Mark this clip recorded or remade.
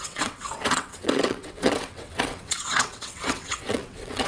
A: remade